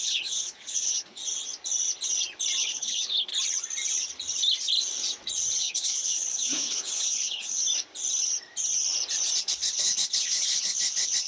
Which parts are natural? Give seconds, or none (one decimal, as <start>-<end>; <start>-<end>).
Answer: 1.2-2.6; 3.3-5.6; 7.6-9.4